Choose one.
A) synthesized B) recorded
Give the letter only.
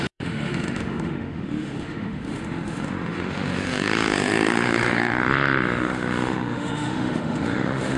A